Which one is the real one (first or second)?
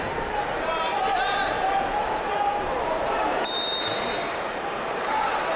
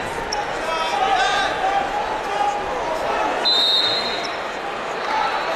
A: second